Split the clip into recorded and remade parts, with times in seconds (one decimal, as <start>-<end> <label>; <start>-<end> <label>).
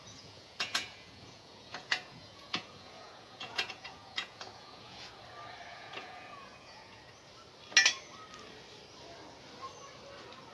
0.0-5.2 remade; 5.2-5.7 recorded; 5.7-7.0 remade; 7.0-10.5 recorded